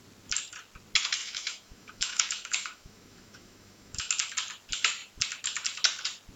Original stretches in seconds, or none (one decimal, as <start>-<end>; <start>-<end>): 0.0-1.2; 4.1-6.4